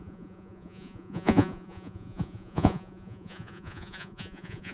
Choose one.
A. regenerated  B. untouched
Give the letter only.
A